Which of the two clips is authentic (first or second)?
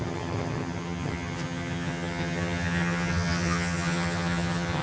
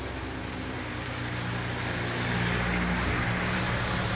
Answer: second